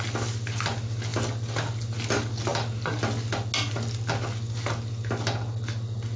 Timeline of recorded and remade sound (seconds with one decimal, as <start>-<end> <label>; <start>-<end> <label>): 0.0-6.2 recorded